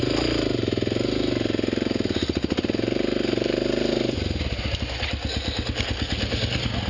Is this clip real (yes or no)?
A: yes